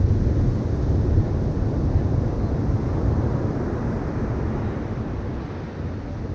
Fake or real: real